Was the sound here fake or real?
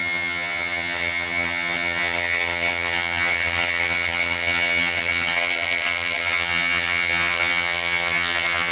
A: fake